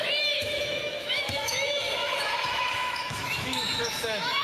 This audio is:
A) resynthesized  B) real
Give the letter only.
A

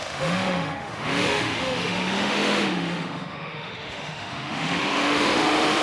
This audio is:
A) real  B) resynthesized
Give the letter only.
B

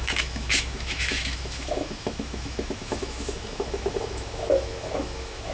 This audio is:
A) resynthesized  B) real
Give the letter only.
A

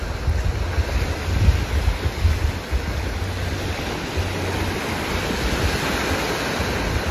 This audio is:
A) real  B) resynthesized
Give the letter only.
A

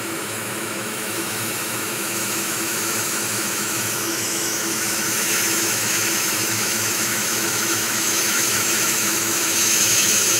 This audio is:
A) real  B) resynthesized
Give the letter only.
B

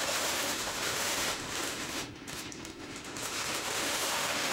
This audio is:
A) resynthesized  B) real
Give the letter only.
A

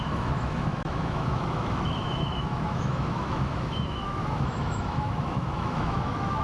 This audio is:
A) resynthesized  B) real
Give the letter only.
A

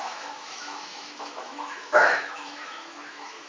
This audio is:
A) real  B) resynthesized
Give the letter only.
B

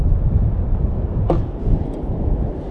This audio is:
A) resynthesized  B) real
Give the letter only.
B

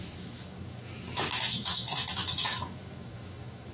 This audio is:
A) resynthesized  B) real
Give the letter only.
A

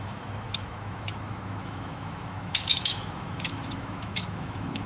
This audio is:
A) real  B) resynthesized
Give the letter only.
B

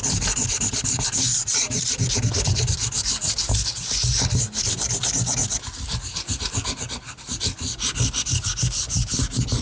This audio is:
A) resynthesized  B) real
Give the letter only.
B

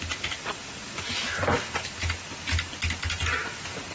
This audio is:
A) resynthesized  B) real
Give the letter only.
B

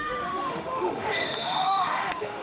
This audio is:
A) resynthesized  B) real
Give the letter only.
A